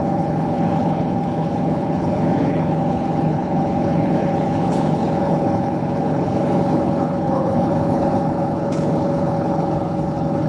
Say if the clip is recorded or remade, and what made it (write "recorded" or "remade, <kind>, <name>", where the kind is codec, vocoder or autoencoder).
remade, codec, HILCodec